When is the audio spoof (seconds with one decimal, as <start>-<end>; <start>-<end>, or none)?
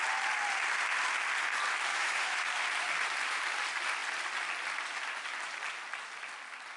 1.9-2.5